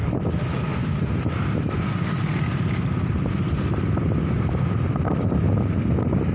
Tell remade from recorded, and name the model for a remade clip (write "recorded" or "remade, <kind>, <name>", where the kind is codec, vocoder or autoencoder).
recorded